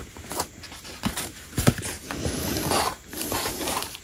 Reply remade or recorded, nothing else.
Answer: remade